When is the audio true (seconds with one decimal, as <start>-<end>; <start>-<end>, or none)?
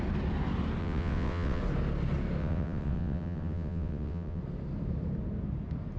0.0-0.8; 1.6-2.4; 4.4-6.0